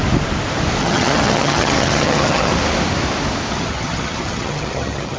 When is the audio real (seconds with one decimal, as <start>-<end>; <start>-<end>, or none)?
0.0-0.8; 2.5-3.5